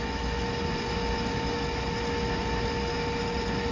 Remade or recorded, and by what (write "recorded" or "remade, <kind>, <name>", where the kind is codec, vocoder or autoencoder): recorded